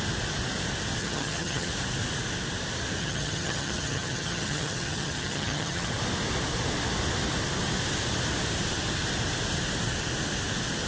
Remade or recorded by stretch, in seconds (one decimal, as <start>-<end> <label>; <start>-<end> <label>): 0.0-1.0 recorded; 1.0-1.7 remade; 1.7-3.0 recorded; 3.0-5.9 remade; 5.9-10.9 recorded